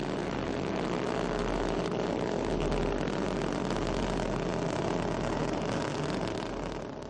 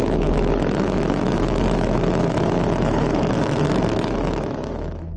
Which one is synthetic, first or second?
second